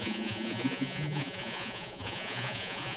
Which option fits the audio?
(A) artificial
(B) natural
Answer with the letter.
A